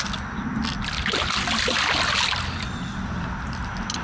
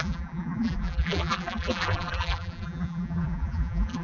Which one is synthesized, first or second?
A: second